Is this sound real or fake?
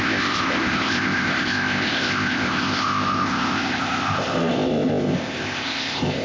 fake